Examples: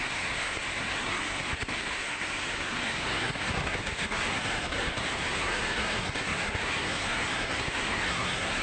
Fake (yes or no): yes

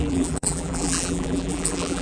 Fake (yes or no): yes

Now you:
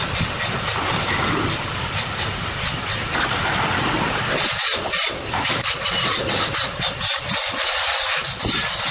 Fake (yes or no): no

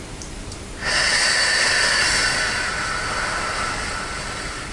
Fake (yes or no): no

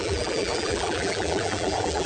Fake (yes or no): yes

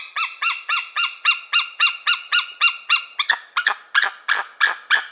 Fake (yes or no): no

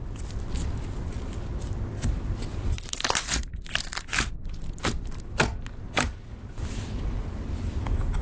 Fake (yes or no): no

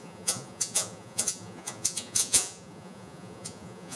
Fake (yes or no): yes